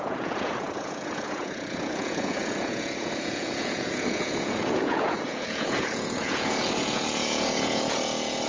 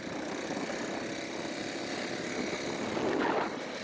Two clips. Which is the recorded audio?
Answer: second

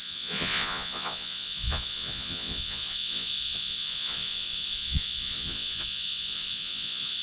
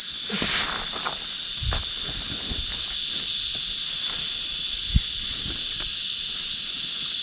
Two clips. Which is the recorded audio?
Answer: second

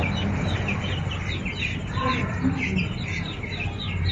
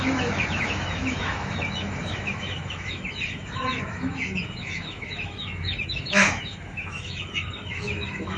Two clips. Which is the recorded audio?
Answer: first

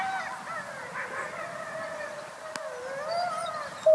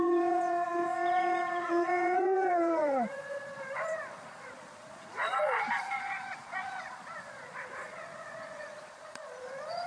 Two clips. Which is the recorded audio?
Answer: first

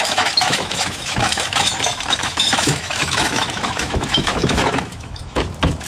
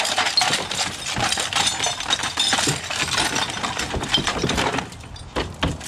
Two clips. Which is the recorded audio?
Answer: second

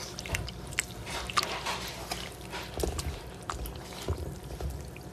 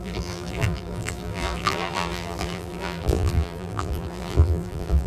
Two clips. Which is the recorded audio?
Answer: first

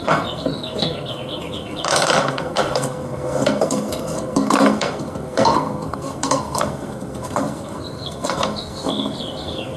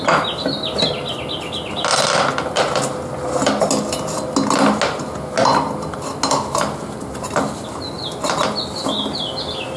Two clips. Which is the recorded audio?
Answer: second